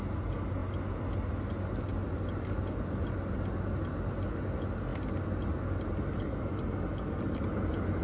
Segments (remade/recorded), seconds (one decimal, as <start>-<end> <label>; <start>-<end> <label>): 0.0-8.0 recorded